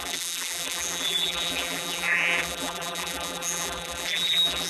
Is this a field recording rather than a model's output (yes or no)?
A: no